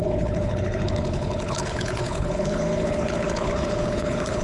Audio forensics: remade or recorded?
remade